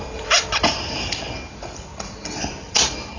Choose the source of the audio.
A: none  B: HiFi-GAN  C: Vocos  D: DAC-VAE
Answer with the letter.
A